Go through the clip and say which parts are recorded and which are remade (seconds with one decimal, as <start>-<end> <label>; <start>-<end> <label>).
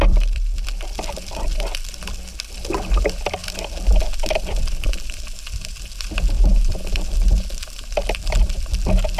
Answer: 0.0-3.4 remade; 3.4-4.0 recorded; 4.0-9.2 remade